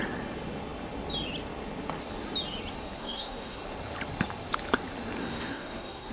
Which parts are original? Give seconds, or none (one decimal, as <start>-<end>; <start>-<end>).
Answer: 0.0-3.0; 3.6-5.2